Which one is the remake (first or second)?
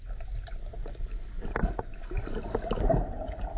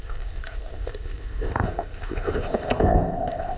second